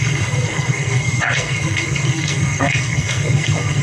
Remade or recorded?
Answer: remade